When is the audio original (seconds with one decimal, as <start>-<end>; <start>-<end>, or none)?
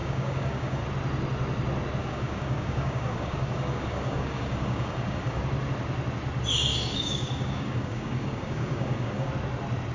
0.8-2.0; 5.4-6.7; 9.3-9.9